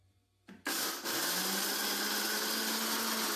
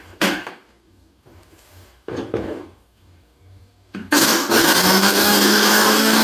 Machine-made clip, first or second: second